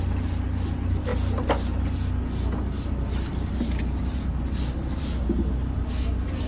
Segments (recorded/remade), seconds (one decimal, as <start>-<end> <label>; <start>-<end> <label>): 0.0-6.5 recorded